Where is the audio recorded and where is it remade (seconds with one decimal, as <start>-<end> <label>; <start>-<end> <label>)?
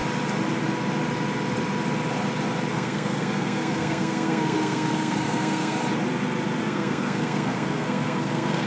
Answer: 0.0-2.7 recorded; 2.7-5.8 remade; 5.8-6.6 recorded; 6.6-8.7 remade